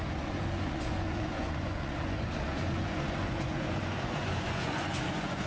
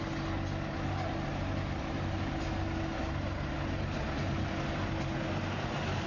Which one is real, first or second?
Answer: second